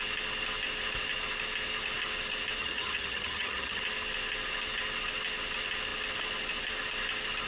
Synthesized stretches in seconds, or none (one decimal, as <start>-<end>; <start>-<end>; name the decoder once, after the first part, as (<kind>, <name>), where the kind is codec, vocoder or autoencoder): 2.6-3.8 (vocoder, HiFi-GAN)